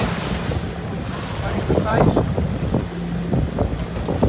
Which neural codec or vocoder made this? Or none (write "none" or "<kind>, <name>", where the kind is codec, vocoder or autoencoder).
none